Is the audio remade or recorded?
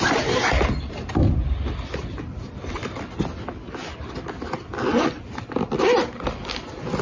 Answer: recorded